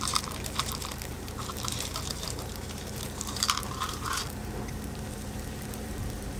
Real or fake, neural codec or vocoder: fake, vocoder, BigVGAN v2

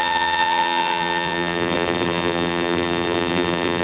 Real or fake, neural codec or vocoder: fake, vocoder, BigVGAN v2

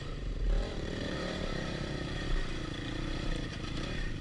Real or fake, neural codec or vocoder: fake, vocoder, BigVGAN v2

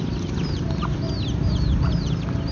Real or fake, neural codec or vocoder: real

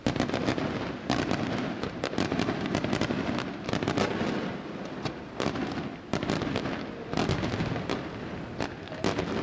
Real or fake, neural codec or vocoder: real